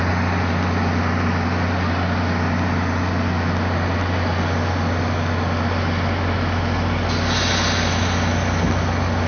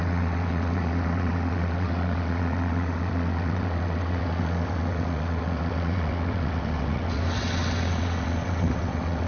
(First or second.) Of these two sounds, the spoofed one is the second